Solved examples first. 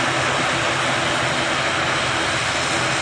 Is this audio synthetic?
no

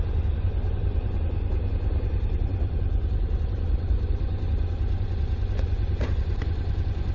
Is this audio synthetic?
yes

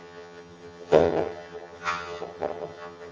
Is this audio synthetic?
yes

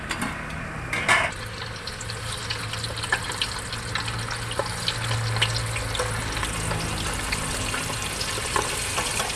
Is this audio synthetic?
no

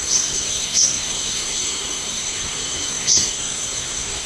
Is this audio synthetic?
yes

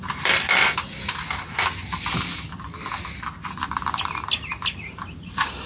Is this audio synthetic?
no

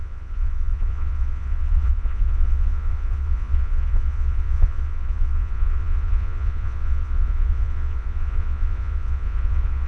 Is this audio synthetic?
yes